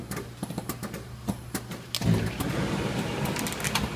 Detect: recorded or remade recorded